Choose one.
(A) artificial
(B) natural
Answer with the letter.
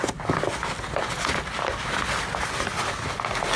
B